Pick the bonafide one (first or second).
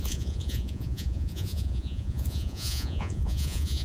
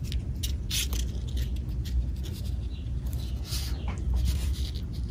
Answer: second